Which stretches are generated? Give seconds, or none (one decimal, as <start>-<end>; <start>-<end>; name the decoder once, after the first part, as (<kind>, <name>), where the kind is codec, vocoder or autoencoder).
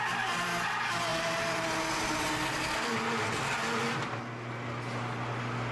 none